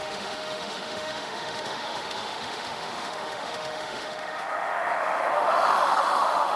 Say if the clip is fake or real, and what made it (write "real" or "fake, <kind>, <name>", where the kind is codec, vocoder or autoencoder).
fake, autoencoder, DAC-VAE